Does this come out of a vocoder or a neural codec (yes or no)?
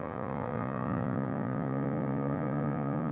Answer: yes